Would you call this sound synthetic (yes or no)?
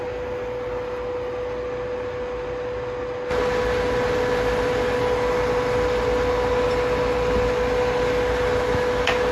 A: no